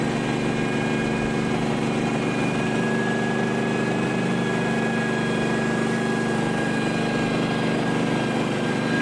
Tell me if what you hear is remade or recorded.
recorded